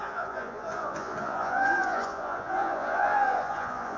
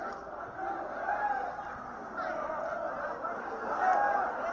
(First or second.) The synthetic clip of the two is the first